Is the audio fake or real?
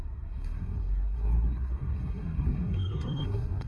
fake